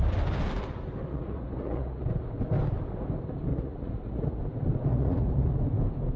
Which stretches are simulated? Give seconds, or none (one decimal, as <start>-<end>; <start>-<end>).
1.1-2.1; 3.5-4.4; 4.9-5.6